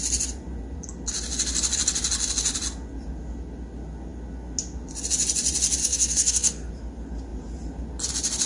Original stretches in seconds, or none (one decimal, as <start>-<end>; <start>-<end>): 0.0-5.8; 6.7-8.5

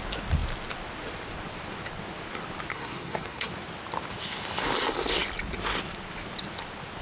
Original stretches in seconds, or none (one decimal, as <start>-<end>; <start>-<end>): 0.0-2.7; 3.5-7.0

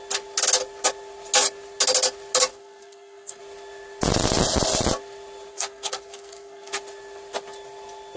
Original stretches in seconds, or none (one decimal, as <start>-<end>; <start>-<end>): 0.0-2.5; 3.4-5.5; 6.7-8.2

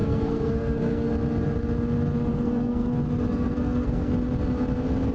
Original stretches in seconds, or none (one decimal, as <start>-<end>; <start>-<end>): 1.1-2.3; 2.9-3.3; 4.1-5.1

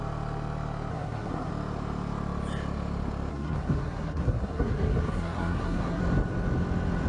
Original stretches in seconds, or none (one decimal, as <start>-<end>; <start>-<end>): 0.0-0.9; 1.5-3.3; 6.0-7.1

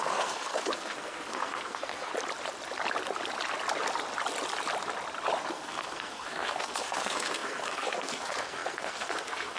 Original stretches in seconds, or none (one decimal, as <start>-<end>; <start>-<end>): 2.1-5.5

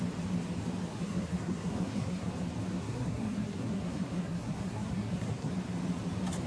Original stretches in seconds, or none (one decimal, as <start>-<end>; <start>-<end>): 0.0-0.9; 2.3-2.8; 5.5-6.5